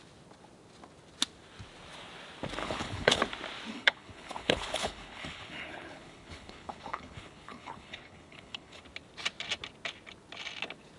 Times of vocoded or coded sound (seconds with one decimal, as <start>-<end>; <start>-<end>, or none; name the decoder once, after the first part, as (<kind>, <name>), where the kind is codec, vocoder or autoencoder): 2.6-3.2 (codec, HILCodec); 3.7-8.8